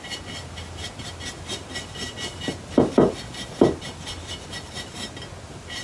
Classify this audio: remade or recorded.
recorded